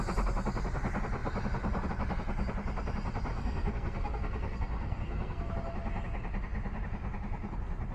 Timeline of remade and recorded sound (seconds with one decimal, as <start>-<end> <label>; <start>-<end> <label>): 0.0-3.3 recorded; 3.3-5.5 remade; 5.5-7.9 recorded